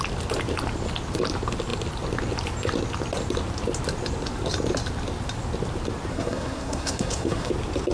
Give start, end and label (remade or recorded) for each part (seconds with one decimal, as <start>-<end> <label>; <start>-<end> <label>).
0.0-6.1 recorded; 6.1-7.5 remade; 7.5-7.9 recorded